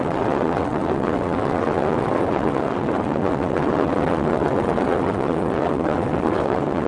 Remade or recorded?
remade